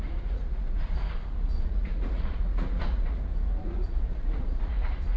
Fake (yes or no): yes